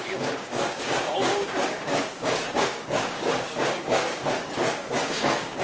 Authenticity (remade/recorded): remade